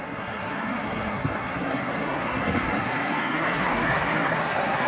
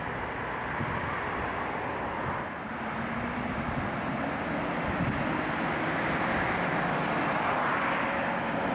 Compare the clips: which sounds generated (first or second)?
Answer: first